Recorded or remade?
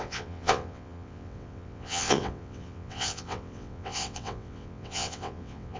remade